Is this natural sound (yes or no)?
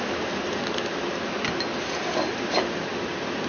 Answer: yes